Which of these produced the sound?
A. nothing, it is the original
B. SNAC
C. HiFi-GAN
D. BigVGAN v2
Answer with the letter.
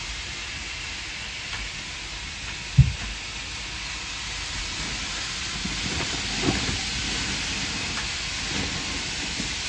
A